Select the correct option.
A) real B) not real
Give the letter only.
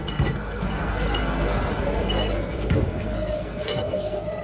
B